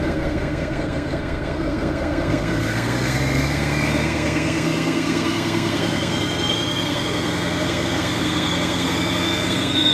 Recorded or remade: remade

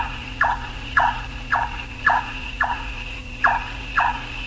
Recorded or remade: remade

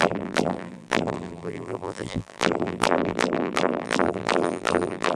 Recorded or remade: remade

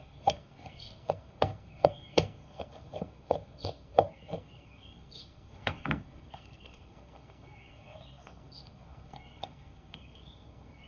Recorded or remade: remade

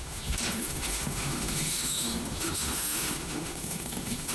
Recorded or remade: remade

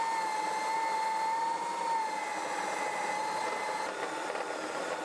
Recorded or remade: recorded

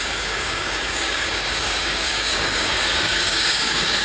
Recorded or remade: remade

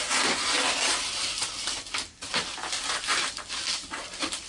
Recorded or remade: recorded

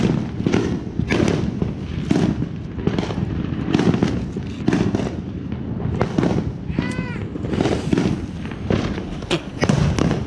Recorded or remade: recorded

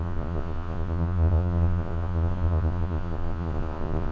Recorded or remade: remade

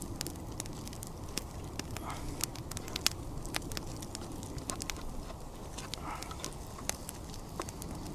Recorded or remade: recorded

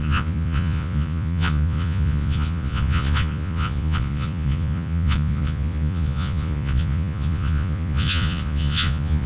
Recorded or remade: remade